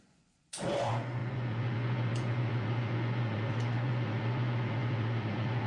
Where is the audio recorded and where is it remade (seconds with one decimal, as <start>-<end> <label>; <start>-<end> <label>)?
0.0-5.7 remade